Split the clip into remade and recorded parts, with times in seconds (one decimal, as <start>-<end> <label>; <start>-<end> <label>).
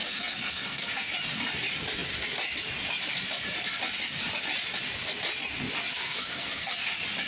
0.0-1.1 remade; 1.1-5.9 recorded; 5.9-6.7 remade; 6.7-7.3 recorded